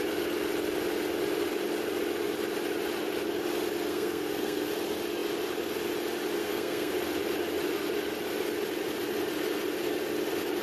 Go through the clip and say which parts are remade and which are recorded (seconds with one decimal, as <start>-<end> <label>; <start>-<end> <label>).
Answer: 0.0-3.9 recorded; 3.9-4.7 remade; 4.7-6.4 recorded; 6.4-6.9 remade; 6.9-10.6 recorded

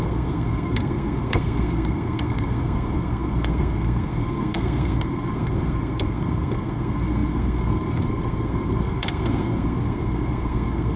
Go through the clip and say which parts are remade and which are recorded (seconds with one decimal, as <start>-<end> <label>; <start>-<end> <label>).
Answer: 0.0-11.0 remade

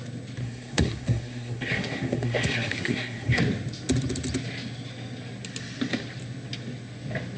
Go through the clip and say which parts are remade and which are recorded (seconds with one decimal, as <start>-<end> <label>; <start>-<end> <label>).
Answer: 0.0-0.4 recorded; 0.4-3.4 remade; 3.4-7.4 recorded

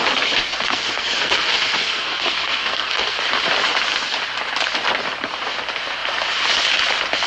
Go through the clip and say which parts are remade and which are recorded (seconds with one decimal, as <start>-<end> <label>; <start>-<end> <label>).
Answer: 0.0-0.5 recorded; 0.5-3.2 remade; 3.2-7.3 recorded

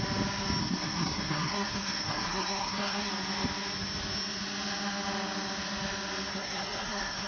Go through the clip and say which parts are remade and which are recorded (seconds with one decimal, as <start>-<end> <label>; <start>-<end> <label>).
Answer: 0.0-0.6 recorded; 0.6-3.1 remade; 3.1-6.3 recorded; 6.3-7.3 remade